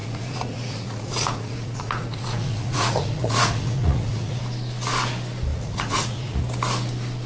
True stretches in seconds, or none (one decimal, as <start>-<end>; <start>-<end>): 4.4-5.5; 6.4-7.3

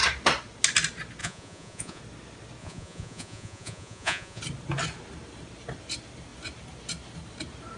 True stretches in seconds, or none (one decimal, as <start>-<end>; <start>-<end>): 0.0-1.2; 2.0-2.6; 4.4-7.8

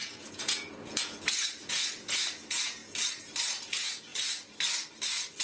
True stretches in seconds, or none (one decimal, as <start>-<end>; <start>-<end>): 2.8-3.6; 4.1-5.4

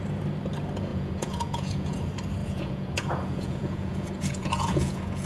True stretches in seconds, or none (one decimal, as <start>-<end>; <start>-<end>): 0.0-0.9; 2.0-2.4

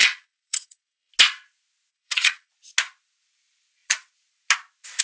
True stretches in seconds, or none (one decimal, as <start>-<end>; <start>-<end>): 1.1-1.9; 2.5-5.0

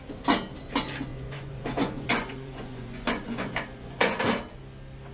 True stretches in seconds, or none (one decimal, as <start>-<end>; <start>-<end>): 0.0-1.1; 4.2-5.1